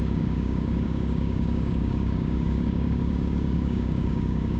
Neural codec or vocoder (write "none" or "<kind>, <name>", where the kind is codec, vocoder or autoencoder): codec, DAC